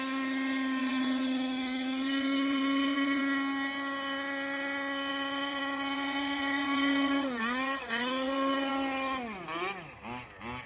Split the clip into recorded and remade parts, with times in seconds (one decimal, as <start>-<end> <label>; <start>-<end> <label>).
0.0-0.8 recorded; 0.8-3.2 remade; 3.2-5.1 recorded; 5.1-8.7 remade; 8.7-10.7 recorded